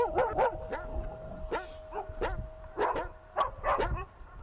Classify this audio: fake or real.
real